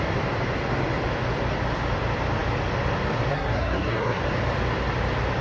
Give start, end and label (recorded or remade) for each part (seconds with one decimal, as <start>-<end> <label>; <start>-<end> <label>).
0.0-3.3 recorded; 3.3-4.2 remade; 4.2-5.4 recorded